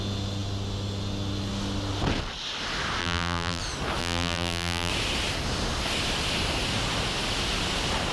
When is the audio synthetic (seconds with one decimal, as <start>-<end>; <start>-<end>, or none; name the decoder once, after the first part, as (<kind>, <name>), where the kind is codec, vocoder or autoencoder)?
3.0-3.6 (vocoder, BigVGAN v2); 4.0-4.9